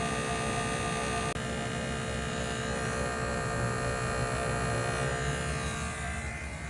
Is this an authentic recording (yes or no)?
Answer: yes